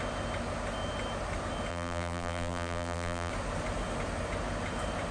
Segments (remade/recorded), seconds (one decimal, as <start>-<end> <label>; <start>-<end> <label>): 0.0-1.7 recorded; 1.7-3.3 remade; 3.3-5.1 recorded